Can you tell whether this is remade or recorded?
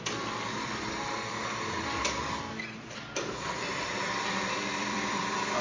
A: remade